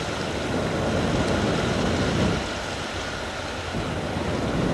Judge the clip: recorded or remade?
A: recorded